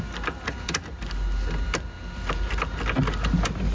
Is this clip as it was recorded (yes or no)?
yes